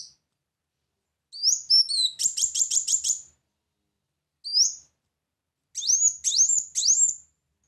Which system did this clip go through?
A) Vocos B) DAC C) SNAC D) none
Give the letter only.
D